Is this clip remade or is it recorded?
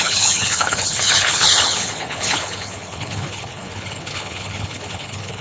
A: remade